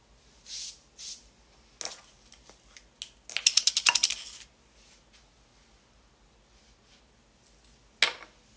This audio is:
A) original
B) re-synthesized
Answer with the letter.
A